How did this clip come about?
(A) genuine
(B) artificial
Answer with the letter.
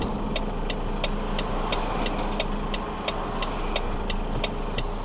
A